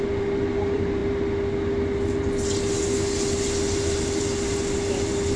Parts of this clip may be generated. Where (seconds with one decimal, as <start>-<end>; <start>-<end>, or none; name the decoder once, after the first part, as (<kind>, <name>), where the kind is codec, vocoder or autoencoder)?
none